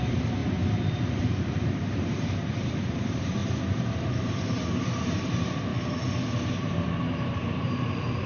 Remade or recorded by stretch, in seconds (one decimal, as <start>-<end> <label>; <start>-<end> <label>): 0.0-0.4 remade; 0.4-1.2 recorded; 1.2-3.4 remade; 3.4-3.9 recorded; 3.9-5.7 remade; 5.7-7.3 recorded; 7.3-8.3 remade